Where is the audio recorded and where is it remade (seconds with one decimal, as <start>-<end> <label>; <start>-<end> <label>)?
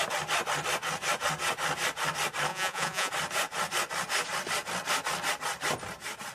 0.0-2.5 recorded; 2.5-3.1 remade; 3.1-6.3 recorded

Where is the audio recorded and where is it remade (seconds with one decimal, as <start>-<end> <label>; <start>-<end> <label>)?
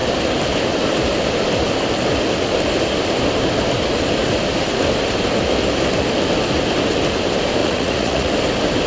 0.0-7.6 recorded; 7.6-8.3 remade; 8.3-8.9 recorded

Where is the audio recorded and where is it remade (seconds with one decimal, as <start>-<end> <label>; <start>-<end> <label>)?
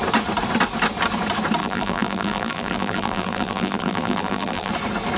0.0-1.6 recorded; 1.6-4.7 remade; 4.7-5.2 recorded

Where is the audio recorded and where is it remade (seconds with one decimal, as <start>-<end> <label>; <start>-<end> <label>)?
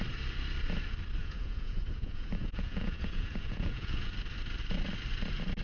0.0-1.2 recorded; 1.2-4.1 remade; 4.1-5.6 recorded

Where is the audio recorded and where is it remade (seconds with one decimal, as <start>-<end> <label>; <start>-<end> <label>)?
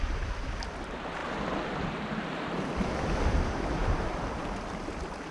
0.0-5.3 recorded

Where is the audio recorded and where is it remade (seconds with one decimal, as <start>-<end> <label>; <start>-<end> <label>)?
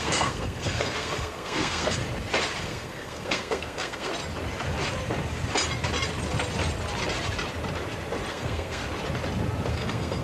0.0-2.0 remade; 2.0-2.6 recorded; 2.6-4.1 remade; 4.1-8.3 recorded; 8.3-8.8 remade; 8.8-9.7 recorded; 9.7-10.2 remade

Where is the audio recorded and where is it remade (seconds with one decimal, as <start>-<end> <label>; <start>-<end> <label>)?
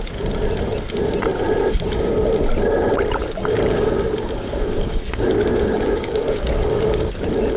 0.0-3.2 recorded; 3.2-7.1 remade; 7.1-7.6 recorded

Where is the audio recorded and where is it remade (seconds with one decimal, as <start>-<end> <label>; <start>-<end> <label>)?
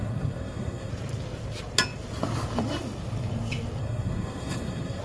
0.0-0.9 remade; 0.9-3.8 recorded; 3.8-5.0 remade